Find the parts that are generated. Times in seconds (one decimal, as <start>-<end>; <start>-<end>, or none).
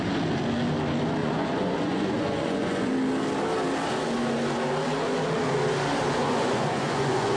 1.2-2.9; 6.2-7.4